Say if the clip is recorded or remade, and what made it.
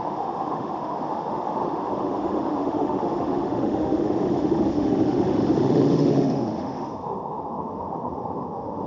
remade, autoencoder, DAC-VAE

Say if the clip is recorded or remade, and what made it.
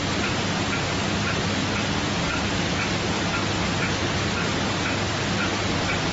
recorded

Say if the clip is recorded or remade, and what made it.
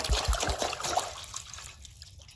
recorded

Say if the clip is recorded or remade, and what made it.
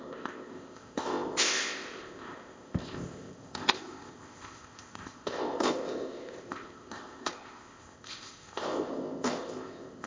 remade, codec, ZipCodec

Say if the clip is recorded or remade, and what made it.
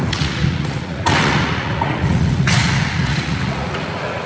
remade, vocoder, Vocos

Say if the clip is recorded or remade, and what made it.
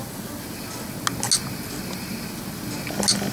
recorded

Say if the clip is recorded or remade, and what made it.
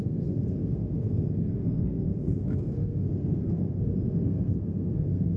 remade, codec, SNAC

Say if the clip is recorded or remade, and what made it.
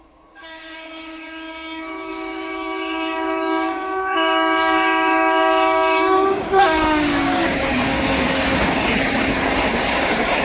remade, codec, DAC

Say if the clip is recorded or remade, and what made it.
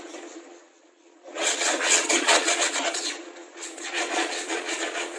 remade, vocoder, Vocos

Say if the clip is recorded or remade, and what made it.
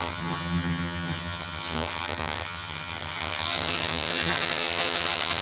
remade, vocoder, HiFi-GAN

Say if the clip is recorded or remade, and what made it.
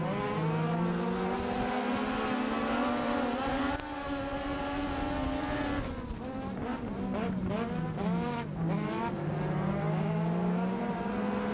recorded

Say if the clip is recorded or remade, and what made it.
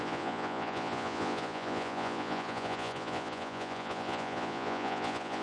remade, vocoder, Vocos